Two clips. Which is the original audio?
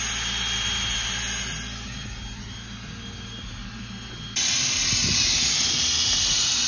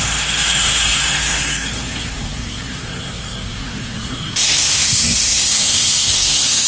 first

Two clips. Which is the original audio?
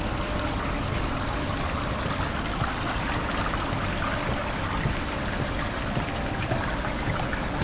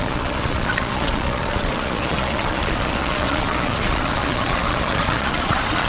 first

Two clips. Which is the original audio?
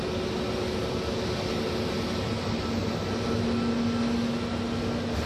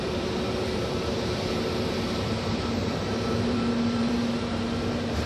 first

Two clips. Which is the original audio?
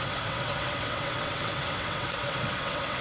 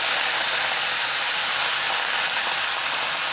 second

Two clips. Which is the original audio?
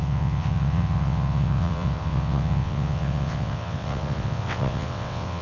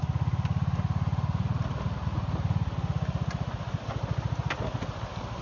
second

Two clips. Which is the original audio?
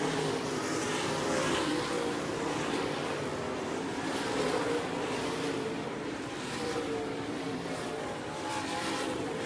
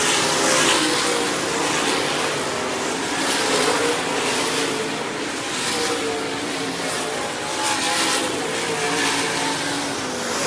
second